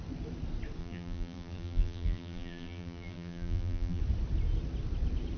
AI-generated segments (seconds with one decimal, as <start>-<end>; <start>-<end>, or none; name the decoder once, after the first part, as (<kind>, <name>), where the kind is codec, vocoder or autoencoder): 0.8-4.0 (vocoder, BigVGAN v2)